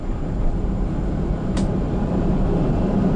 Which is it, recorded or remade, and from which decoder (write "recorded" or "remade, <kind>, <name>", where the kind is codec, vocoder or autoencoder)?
remade, vocoder, BigVGAN v2